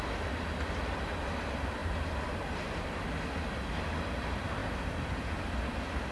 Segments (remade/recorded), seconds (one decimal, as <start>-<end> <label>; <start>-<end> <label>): 0.0-1.8 recorded; 1.8-3.0 remade; 3.0-6.1 recorded